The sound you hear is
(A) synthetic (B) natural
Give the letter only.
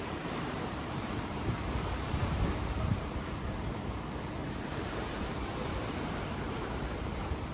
A